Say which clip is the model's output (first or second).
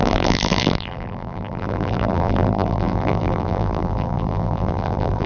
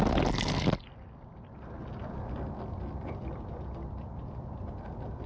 first